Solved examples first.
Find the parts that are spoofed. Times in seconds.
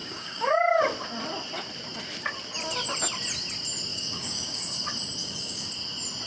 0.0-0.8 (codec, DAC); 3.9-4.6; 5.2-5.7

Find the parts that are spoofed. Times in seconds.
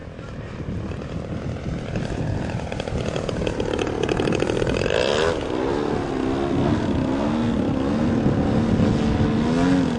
none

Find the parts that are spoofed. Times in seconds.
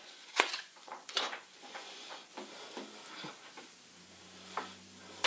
0.0-2.3 (vocoder, Vocos)